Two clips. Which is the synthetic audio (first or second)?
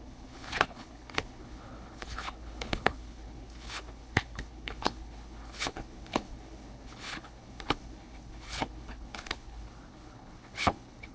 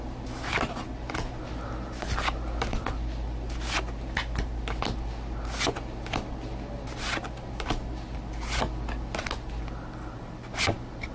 first